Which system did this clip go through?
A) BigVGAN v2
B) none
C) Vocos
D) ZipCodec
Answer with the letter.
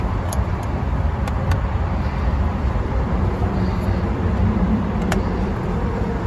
A